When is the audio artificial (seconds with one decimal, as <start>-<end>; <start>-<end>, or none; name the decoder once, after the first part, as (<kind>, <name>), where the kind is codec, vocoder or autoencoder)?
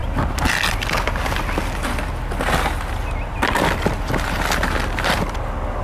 none